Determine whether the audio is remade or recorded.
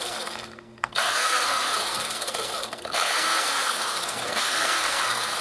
remade